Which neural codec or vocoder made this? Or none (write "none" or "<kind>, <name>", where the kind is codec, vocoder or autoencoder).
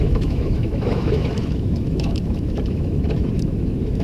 autoencoder, DAC-VAE